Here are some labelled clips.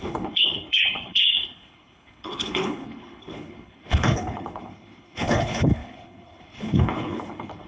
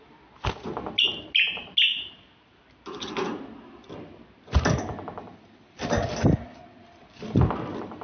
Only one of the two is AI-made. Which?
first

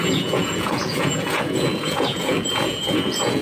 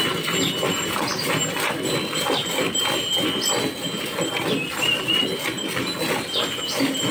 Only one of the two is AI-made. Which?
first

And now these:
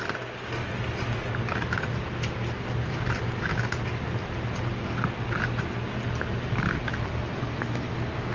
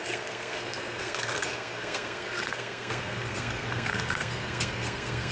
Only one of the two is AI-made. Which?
second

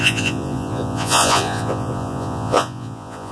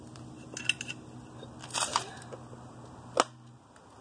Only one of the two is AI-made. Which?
first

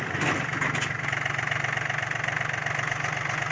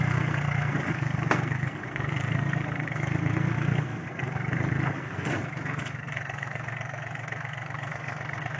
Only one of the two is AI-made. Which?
second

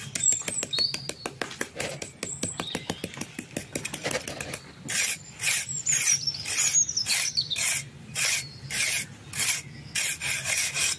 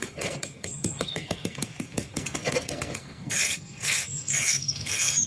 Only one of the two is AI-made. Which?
second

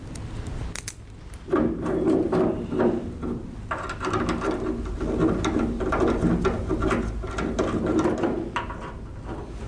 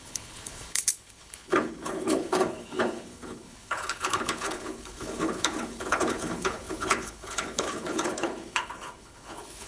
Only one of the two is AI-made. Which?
second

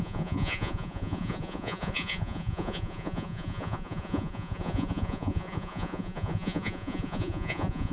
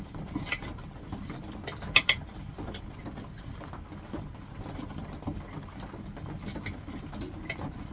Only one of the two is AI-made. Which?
first